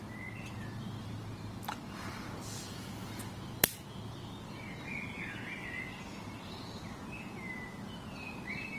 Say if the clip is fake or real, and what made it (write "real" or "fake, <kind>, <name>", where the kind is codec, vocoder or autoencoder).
real